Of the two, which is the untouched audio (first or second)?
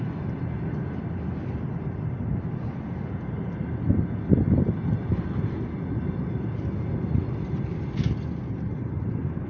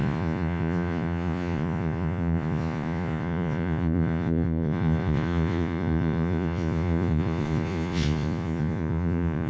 first